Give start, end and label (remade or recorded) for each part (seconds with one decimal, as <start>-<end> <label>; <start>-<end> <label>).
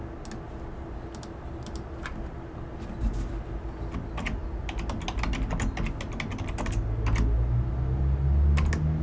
0.0-9.0 recorded